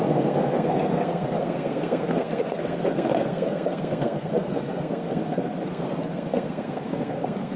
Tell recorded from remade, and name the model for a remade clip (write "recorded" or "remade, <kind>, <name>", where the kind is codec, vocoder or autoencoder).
remade, codec, SNAC